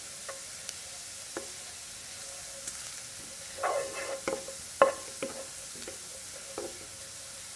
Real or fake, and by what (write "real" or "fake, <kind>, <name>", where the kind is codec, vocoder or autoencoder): real